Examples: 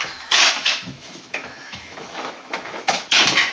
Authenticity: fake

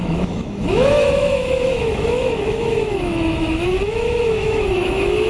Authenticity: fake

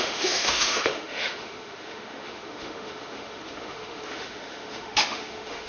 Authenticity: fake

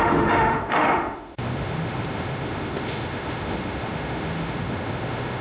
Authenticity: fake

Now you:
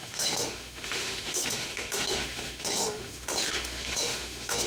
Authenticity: fake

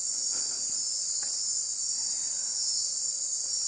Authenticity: real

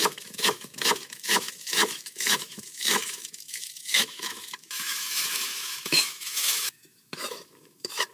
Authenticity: fake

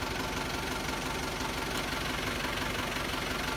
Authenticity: real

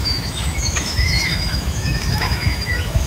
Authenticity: fake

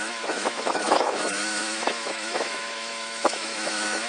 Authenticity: fake